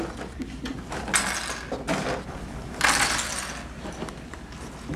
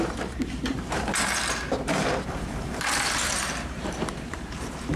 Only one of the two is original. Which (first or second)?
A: first